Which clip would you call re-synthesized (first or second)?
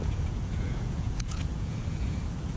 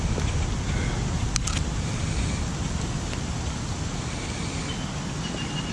first